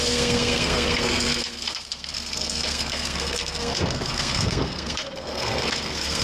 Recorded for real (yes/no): no